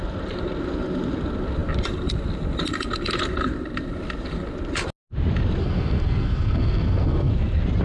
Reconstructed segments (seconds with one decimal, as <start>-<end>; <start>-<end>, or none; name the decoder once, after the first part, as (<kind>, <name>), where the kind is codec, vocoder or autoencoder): 5.6-7.3 (codec, SNAC)